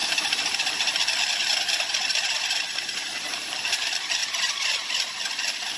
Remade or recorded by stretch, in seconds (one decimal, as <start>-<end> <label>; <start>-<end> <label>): 0.0-3.5 remade; 3.5-4.2 recorded; 4.2-5.8 remade